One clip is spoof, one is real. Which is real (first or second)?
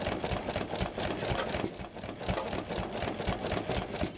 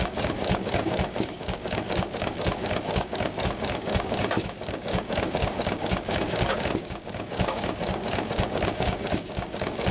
first